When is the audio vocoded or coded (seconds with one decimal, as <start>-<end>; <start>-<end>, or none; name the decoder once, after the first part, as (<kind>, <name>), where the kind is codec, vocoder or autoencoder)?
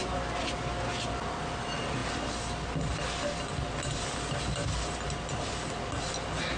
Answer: none